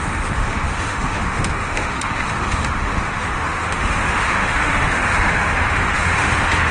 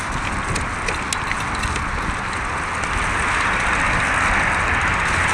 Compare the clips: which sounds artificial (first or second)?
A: first